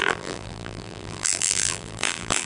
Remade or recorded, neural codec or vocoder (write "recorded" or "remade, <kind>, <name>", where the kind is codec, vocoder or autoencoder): remade, vocoder, BigVGAN v2